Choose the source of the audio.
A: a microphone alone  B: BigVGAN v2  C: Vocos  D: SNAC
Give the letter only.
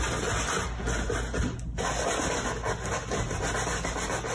A